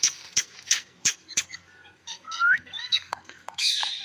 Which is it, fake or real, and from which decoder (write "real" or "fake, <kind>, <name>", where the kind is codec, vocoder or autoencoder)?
fake, codec, SNAC